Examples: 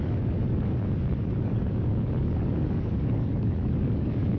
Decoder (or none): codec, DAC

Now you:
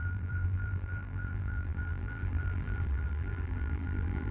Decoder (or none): vocoder, BigVGAN v2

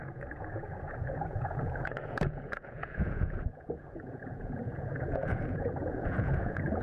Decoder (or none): vocoder, Vocos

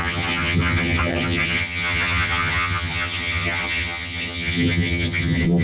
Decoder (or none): vocoder, HiFi-GAN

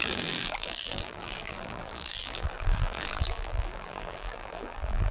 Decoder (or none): vocoder, BigVGAN v2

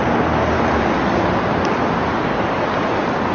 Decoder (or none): none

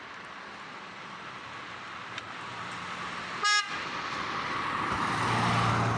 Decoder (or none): none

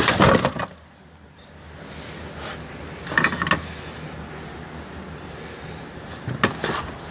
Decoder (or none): none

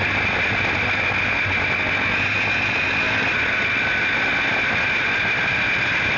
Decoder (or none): none